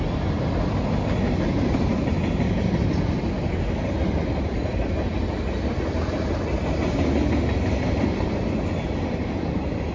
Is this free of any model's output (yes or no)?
yes